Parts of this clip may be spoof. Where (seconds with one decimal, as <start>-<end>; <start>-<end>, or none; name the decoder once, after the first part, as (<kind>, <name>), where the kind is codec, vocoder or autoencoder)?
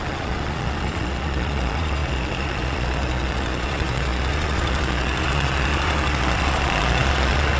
0.0-7.6 (vocoder, Vocos)